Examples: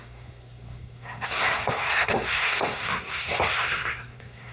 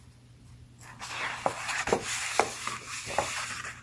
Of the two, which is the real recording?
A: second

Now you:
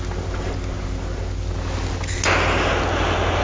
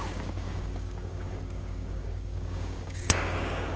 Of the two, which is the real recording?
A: first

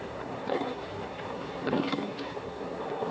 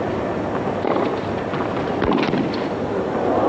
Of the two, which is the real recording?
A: second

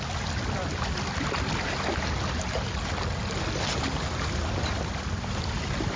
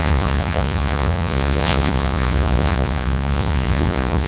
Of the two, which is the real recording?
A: first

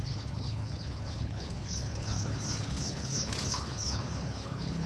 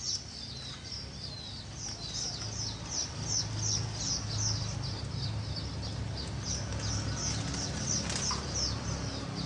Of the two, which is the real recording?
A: second